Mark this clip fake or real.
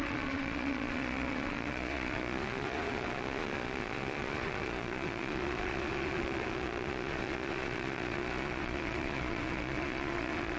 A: fake